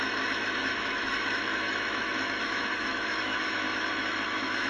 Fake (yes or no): yes